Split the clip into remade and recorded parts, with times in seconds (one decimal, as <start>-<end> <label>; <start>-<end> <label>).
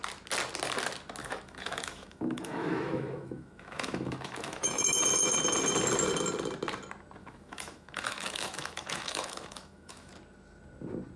0.0-1.2 recorded; 1.2-5.0 remade; 5.0-7.2 recorded; 7.2-10.1 remade; 10.1-11.2 recorded